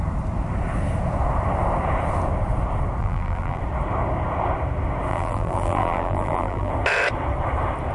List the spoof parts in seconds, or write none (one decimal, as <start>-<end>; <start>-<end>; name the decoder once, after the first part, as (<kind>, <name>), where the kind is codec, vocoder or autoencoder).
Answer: 3.0-3.6 (vocoder, BigVGAN v2); 5.1-6.7